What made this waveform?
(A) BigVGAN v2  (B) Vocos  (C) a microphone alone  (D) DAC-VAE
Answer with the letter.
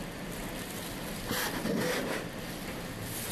C